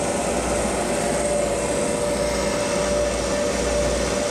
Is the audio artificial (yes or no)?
no